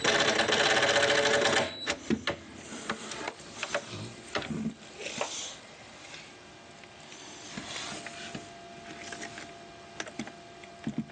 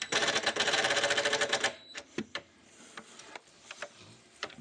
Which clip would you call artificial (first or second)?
second